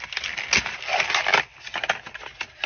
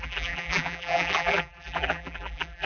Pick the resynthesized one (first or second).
second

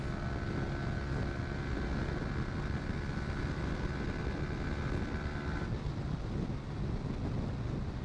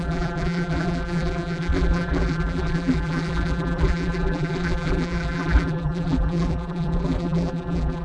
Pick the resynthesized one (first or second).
second